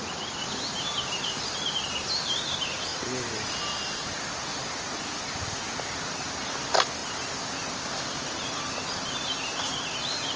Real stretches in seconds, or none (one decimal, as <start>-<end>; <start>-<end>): 7.0-7.5